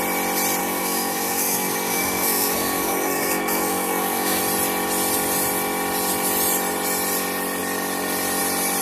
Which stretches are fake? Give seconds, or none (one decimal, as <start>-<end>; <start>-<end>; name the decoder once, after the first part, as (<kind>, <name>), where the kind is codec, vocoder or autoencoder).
0.6-4.4 (codec, SNAC)